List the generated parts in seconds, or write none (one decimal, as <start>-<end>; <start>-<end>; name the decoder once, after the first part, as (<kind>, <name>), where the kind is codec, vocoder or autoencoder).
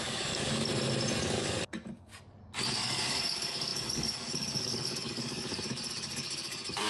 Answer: 0.0-0.7 (codec, DAC); 1.2-2.1; 2.7-6.9